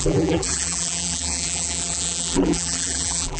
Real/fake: fake